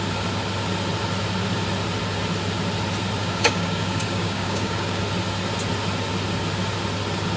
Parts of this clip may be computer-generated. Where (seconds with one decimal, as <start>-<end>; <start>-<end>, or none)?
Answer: 3.2-5.0